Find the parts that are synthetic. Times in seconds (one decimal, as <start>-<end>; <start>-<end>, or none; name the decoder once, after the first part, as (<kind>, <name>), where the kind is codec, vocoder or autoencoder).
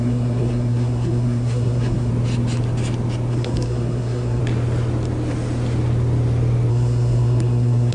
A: 0.0-2.1 (codec, SNAC); 3.3-4.4; 6.7-7.9